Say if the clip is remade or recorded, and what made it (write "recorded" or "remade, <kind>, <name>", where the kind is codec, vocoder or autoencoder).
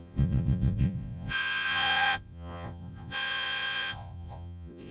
remade, vocoder, Vocos